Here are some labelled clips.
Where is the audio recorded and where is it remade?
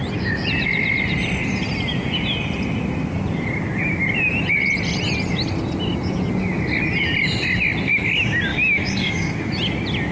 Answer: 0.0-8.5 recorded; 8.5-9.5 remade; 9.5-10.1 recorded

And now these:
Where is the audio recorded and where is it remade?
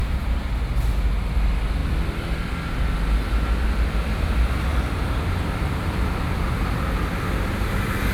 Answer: 0.0-0.7 remade; 0.7-4.7 recorded; 4.7-6.8 remade; 6.8-8.1 recorded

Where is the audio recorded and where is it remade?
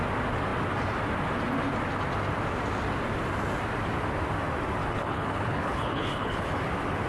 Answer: 0.0-4.8 recorded; 4.8-6.6 remade; 6.6-7.1 recorded